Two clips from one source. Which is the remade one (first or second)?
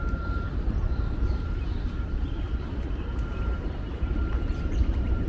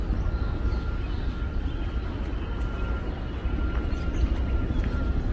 first